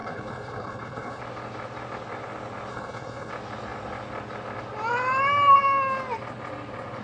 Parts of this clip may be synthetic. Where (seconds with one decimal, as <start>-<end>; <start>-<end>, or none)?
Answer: 0.0-1.2; 2.7-3.3